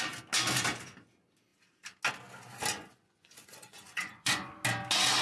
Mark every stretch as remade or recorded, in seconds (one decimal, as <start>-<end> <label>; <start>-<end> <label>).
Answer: 0.0-2.7 recorded; 2.7-4.5 remade; 4.5-5.2 recorded

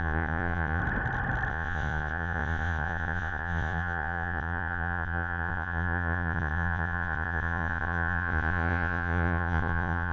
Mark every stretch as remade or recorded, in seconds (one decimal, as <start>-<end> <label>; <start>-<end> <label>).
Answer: 0.0-0.8 remade; 0.8-1.5 recorded; 1.5-10.1 remade

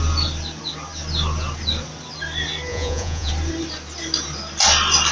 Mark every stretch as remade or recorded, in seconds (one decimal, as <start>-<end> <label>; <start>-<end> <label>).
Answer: 0.0-2.7 recorded; 2.7-3.3 remade; 3.3-5.1 recorded

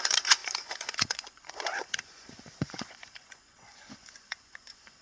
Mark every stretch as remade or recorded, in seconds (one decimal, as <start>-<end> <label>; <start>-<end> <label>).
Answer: 0.0-5.0 remade

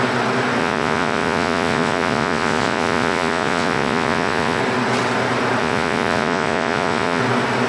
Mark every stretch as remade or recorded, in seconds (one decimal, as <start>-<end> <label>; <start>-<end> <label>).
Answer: 0.0-0.6 recorded; 0.6-4.6 remade; 4.6-5.6 recorded; 5.6-7.2 remade; 7.2-7.7 recorded

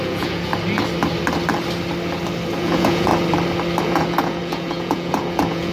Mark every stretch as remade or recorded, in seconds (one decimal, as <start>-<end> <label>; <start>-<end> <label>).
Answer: 0.0-0.5 remade; 0.5-2.6 recorded; 2.6-3.1 remade; 3.1-3.8 recorded; 3.8-5.7 remade

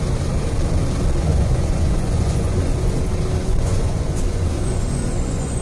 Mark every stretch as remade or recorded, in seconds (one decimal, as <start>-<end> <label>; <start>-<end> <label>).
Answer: 0.0-1.3 recorded; 1.3-3.0 remade; 3.0-3.4 recorded; 3.4-5.6 remade